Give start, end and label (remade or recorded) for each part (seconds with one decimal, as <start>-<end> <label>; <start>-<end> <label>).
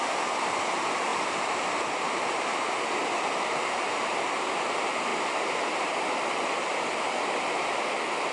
0.0-1.1 recorded; 1.1-4.3 remade; 4.3-8.3 recorded